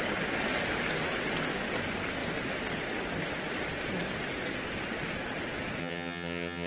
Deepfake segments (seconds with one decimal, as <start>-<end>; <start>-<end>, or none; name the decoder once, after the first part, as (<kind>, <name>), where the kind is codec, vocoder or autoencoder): 5.8-6.7 (vocoder, HiFi-GAN)